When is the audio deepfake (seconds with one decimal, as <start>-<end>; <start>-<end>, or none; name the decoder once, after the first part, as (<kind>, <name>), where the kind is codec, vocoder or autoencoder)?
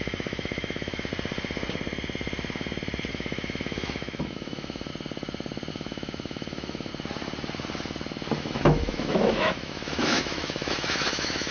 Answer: 0.0-1.1 (autoencoder, DAC-VAE); 3.1-4.9; 5.7-6.9; 8.4-11.5